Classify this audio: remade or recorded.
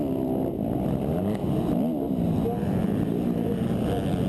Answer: recorded